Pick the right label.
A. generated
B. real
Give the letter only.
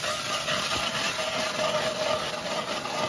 B